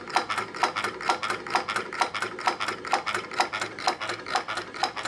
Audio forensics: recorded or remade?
recorded